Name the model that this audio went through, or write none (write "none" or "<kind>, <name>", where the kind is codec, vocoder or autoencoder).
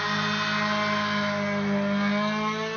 none